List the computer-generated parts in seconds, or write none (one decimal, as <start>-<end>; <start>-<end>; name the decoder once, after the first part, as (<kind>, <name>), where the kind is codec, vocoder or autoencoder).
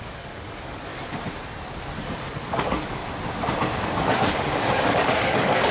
0.0-0.9 (codec, DAC); 2.0-3.0; 3.8-5.7